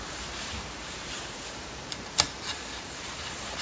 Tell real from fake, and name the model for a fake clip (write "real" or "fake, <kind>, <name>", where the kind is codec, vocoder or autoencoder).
fake, vocoder, BigVGAN v2